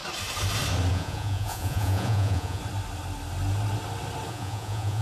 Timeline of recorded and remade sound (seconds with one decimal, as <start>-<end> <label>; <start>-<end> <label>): 0.0-0.9 recorded; 0.9-2.6 remade; 2.6-4.3 recorded; 4.3-5.0 remade